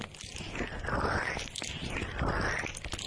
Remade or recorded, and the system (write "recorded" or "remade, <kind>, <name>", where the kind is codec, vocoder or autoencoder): recorded